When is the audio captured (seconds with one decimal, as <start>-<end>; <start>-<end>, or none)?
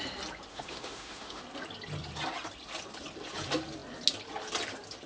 0.0-0.5; 1.4-5.1